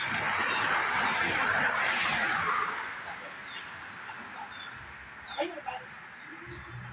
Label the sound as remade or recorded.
recorded